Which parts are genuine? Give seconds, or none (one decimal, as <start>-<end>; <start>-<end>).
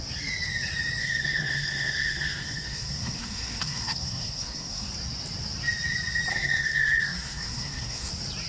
0.0-1.0; 4.9-6.3; 8.1-8.5